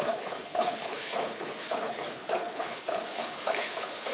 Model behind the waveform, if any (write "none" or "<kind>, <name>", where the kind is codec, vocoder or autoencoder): codec, HILCodec